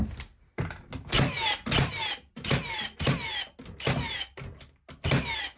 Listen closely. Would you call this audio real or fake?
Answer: real